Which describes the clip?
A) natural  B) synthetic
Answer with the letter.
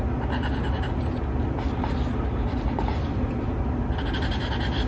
A